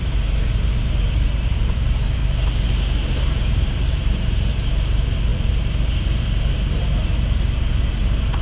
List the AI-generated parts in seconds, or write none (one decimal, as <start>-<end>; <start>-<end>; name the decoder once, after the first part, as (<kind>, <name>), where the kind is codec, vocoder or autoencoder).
0.0-2.2 (vocoder, BigVGAN v2); 3.1-8.4